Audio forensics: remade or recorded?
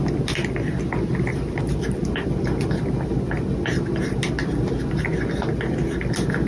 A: recorded